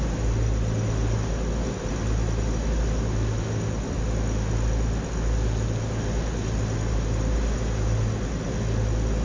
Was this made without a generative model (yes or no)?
yes